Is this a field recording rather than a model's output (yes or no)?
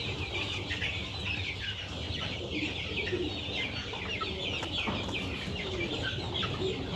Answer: yes